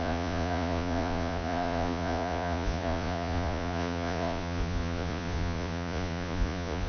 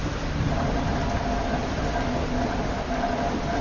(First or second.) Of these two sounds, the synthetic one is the first